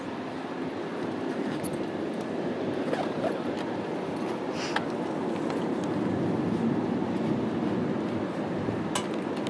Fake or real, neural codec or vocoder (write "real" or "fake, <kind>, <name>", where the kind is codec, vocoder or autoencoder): real